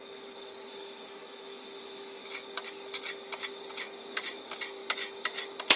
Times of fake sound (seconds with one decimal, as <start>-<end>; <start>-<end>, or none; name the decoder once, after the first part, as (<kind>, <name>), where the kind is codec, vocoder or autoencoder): 0.7-2.2 (autoencoder, DAC-VAE)